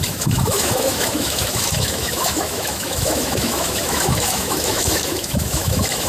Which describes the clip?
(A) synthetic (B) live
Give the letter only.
A